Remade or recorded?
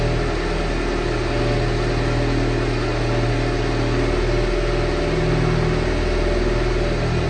recorded